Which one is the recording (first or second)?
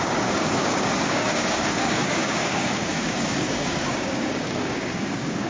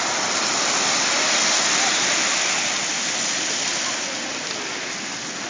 second